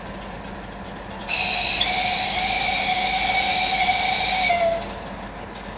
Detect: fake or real real